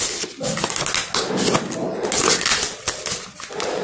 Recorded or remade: recorded